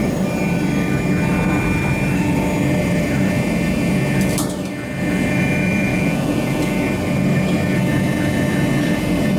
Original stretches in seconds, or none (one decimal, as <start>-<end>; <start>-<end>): 0.0-5.9; 6.7-9.4